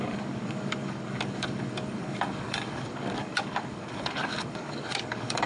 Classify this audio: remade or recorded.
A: remade